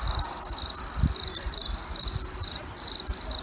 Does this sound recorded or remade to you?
recorded